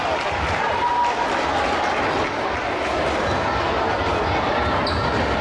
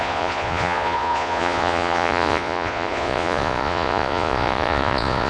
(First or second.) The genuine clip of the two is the first